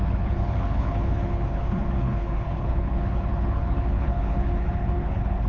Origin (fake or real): fake